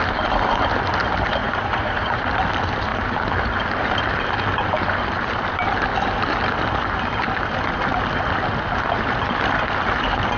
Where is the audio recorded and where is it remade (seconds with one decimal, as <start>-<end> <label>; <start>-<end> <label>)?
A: 0.0-1.4 recorded; 1.4-2.2 remade; 2.2-10.4 recorded